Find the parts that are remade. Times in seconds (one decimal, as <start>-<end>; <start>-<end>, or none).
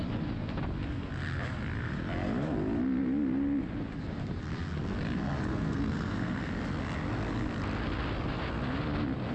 5.5-6.5